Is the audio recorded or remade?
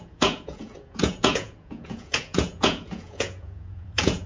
remade